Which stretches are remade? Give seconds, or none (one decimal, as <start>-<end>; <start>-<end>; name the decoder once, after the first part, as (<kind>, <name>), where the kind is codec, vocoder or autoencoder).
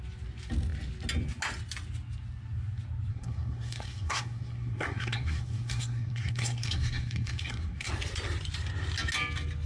3.1-7.9 (codec, SNAC)